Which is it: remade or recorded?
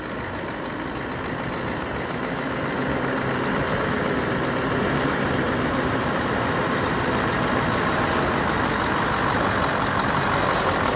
recorded